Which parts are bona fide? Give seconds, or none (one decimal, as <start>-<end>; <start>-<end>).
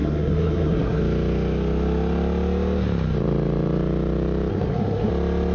1.0-4.5; 5.1-5.5